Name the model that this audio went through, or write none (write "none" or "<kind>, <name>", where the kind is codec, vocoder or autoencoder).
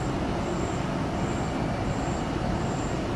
none